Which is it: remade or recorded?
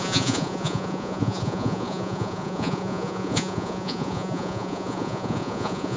remade